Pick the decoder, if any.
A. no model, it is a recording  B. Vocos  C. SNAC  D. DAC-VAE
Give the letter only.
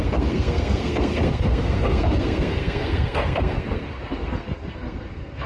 C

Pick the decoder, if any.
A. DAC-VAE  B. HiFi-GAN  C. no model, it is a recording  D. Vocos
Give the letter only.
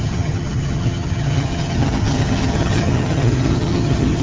B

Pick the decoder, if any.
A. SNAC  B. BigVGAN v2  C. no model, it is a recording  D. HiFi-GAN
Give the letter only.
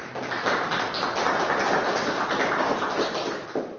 C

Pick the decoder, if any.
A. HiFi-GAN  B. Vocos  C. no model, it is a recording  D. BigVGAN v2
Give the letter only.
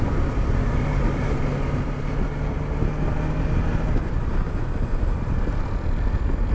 C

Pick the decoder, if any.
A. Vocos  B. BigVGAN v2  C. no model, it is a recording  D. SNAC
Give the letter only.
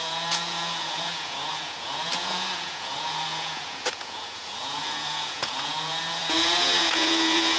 A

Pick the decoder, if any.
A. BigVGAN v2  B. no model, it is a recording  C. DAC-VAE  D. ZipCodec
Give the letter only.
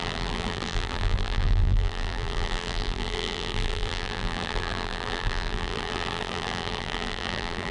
A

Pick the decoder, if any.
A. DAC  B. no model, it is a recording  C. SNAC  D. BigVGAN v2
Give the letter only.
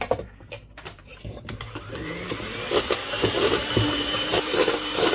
D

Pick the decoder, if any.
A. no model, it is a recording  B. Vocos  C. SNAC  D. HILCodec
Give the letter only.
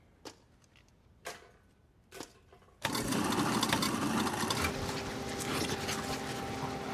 A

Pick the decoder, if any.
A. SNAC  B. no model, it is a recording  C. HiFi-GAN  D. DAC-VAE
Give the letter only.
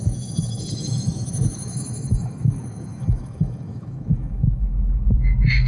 D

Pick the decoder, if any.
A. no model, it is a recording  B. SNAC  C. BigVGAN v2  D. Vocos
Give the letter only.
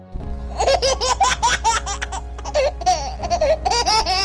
A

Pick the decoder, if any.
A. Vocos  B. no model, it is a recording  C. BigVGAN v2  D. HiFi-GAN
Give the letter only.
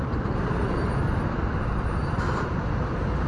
C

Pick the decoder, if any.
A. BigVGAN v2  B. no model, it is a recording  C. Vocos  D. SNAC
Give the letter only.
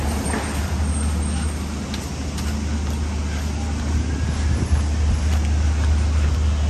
B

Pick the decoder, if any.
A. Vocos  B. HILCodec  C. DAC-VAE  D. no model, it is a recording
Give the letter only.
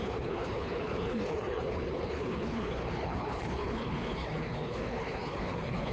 B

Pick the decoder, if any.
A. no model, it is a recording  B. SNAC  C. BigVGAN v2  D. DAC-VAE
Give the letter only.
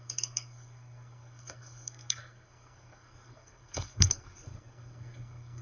B